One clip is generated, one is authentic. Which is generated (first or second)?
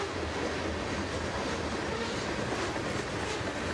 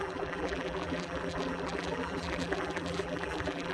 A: second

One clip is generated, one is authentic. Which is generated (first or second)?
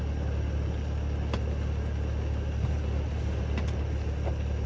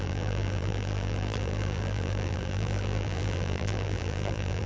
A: second